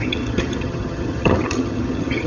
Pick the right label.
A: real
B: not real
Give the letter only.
B